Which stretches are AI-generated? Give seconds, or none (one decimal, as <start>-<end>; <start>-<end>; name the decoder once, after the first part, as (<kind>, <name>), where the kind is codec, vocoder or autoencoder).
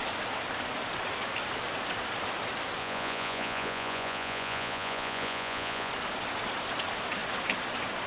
2.8-5.9 (vocoder, Vocos)